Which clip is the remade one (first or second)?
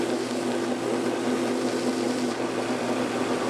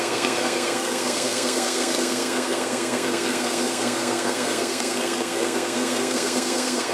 second